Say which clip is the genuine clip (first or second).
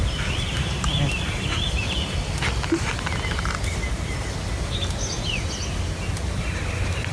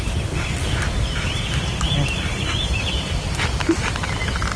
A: first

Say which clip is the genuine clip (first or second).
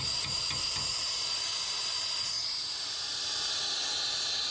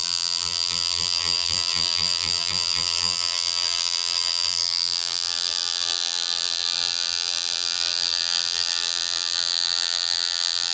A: first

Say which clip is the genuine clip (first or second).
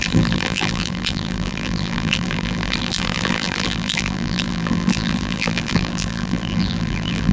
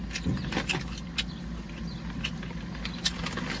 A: second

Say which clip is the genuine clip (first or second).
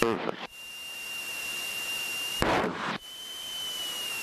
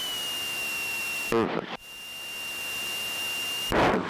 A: second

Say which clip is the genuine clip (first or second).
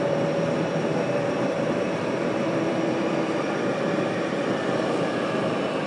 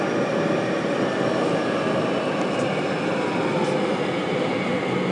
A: second